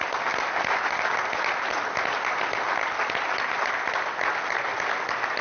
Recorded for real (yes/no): yes